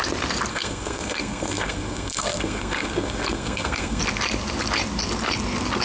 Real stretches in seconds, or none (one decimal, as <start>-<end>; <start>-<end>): 0.0-0.5; 4.0-5.8